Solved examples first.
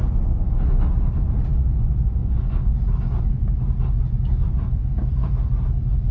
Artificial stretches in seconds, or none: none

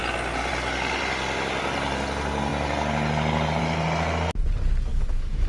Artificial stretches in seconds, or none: 4.9-5.5 (autoencoder, DAC-VAE)

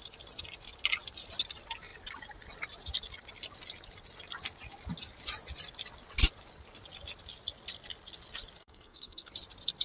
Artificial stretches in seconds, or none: 8.6-9.3 (codec, SNAC)

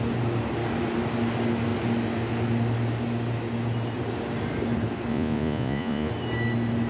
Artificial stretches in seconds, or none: 5.1-6.1 (vocoder, Vocos)

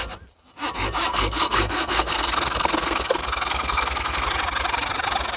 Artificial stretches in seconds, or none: 1.1-4.3 (codec, SNAC)

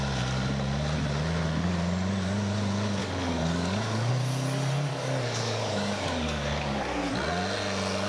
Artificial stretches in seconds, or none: 3.0-4.1 (codec, DAC); 4.9-7.1